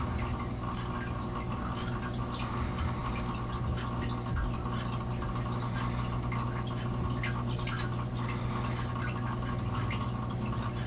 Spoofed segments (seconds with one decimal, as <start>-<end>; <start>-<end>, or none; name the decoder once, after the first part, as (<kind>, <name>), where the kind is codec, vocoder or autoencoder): none